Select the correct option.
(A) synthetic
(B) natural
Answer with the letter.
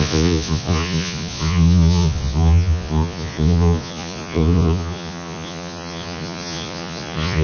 A